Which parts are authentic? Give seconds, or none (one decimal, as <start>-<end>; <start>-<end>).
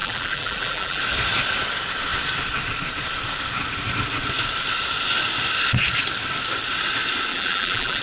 1.0-7.3